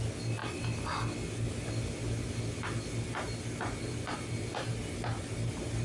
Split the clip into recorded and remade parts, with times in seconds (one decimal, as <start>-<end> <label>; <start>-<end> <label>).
0.0-5.8 recorded

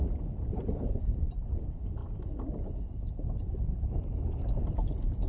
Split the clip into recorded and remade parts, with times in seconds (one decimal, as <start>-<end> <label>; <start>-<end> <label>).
0.0-5.3 recorded